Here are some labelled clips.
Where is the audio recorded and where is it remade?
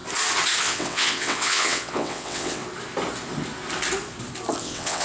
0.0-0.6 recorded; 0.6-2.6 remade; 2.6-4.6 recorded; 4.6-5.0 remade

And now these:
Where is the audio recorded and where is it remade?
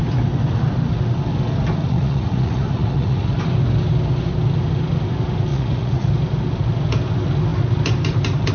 0.0-1.8 recorded; 1.8-3.3 remade; 3.3-5.5 recorded; 5.5-6.1 remade; 6.1-8.5 recorded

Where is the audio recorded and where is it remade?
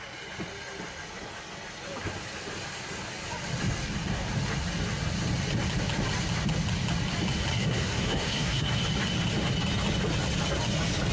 0.0-7.5 recorded; 7.5-8.8 remade; 8.8-11.1 recorded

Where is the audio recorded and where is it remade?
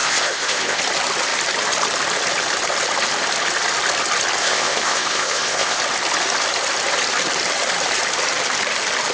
0.0-0.8 remade; 0.8-4.4 recorded; 4.4-5.8 remade; 5.8-9.1 recorded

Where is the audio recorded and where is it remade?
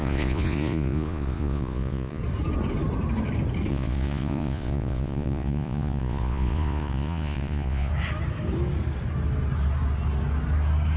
0.0-2.2 remade; 2.2-3.7 recorded; 3.7-7.9 remade; 7.9-11.0 recorded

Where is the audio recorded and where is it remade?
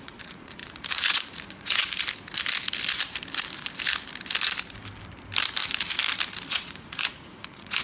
0.0-1.8 remade; 1.8-6.5 recorded; 6.5-7.8 remade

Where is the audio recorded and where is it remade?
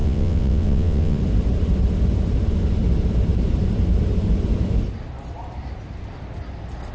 0.0-1.2 remade; 1.2-6.9 recorded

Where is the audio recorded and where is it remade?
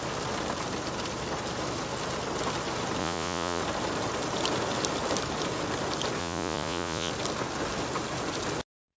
0.0-3.0 recorded; 3.0-3.6 remade; 3.6-6.2 recorded; 6.2-7.1 remade; 7.1-9.0 recorded